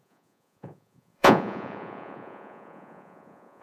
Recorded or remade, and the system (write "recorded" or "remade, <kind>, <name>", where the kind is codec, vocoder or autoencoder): remade, vocoder, Vocos